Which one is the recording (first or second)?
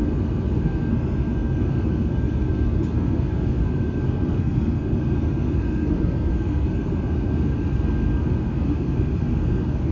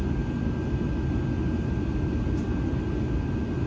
second